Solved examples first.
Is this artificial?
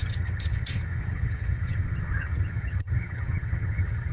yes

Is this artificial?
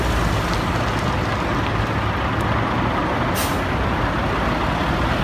no